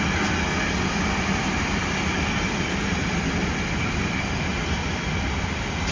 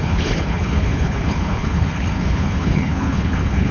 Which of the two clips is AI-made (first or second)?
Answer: second